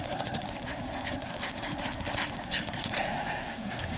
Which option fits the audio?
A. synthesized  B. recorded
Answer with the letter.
A